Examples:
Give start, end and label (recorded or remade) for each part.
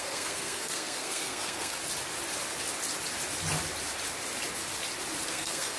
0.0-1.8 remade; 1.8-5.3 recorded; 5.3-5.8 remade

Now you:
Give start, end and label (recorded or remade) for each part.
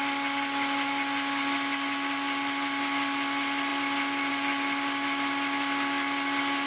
0.0-6.7 recorded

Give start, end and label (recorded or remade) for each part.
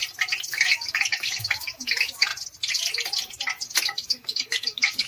0.0-0.5 recorded; 0.5-2.3 remade; 2.3-3.8 recorded; 3.8-5.1 remade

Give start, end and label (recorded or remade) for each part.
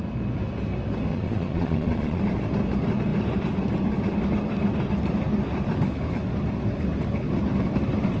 0.0-1.1 recorded; 1.1-2.2 remade; 2.2-8.2 recorded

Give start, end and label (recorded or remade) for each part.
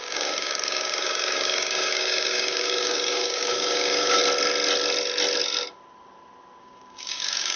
0.0-4.2 remade; 4.2-6.6 recorded; 6.6-7.6 remade